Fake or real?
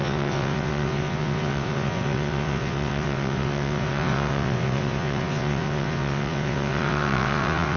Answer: fake